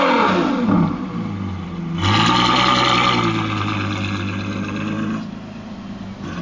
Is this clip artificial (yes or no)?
no